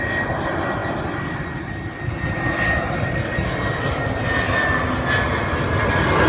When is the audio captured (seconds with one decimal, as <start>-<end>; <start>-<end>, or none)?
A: 0.0-6.3

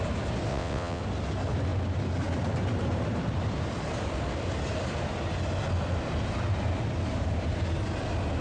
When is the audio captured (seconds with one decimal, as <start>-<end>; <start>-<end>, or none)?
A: 0.0-0.5; 1.0-8.4

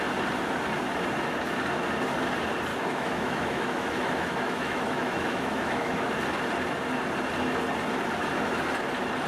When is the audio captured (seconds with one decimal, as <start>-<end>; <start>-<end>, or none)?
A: 0.0-2.7; 6.1-9.3

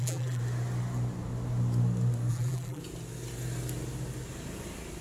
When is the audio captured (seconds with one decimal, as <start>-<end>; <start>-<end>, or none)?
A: 0.4-2.3; 2.8-5.0

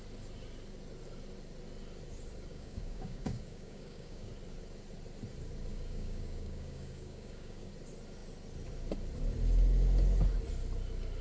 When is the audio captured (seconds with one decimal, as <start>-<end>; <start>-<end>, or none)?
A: 0.0-2.5; 4.3-5.7; 7.7-11.2